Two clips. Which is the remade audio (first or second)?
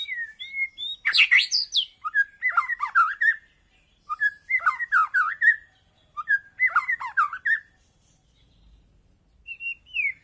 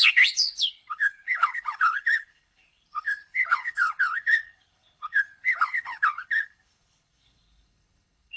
second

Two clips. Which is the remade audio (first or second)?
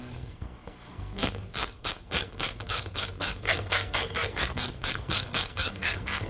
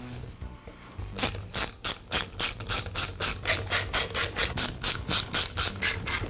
first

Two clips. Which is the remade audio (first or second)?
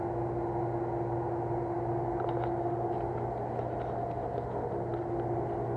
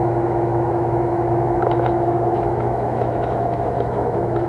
second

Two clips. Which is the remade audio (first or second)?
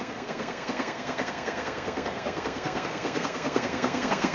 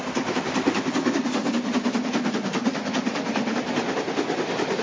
first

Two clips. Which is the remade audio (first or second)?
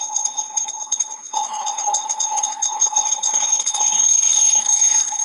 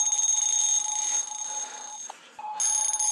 first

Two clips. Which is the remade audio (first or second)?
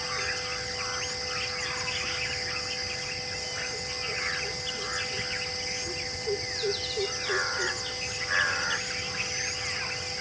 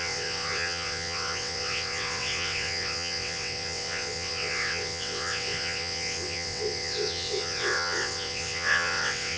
second